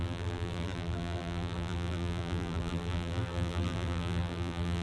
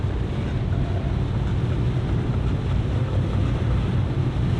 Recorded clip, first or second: second